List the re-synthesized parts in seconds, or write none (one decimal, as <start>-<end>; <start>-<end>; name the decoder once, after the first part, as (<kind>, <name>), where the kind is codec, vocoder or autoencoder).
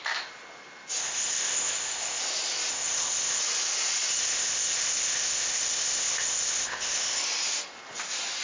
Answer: 1.0-2.2 (codec, ZipCodec); 2.7-3.4; 4.1-7.2